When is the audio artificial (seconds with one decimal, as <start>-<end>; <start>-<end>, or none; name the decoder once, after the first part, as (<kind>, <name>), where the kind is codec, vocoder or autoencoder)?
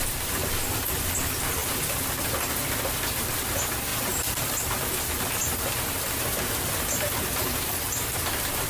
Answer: 3.9-4.5 (vocoder, BigVGAN v2)